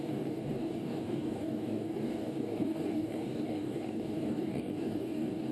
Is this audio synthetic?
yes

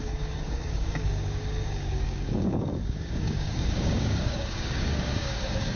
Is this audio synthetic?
yes